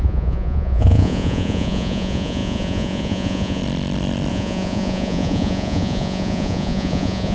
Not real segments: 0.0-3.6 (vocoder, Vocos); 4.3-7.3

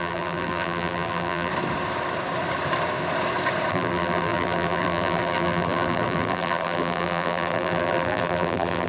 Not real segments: 0.0-1.5 (vocoder, BigVGAN v2); 3.7-8.9

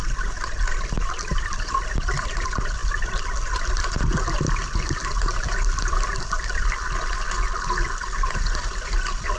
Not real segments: none

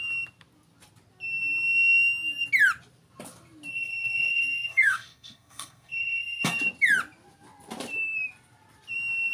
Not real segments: 3.7-6.6 (codec, SNAC)

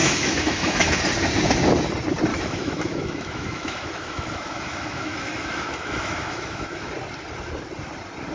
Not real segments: 0.0-1.0 (autoencoder, DAC-VAE); 2.3-6.9

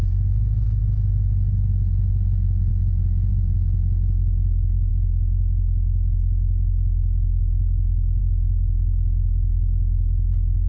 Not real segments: none

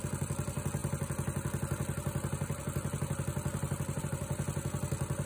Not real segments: none